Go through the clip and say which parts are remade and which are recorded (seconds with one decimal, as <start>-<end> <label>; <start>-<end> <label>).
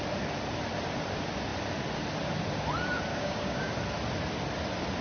0.0-3.1 recorded; 3.1-3.7 remade; 3.7-5.0 recorded